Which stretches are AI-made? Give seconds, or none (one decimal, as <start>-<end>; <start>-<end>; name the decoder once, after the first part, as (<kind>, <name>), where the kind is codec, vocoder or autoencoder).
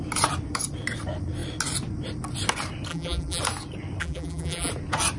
2.9-3.4 (vocoder, BigVGAN v2); 4.0-4.7